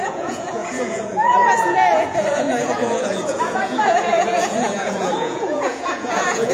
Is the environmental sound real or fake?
fake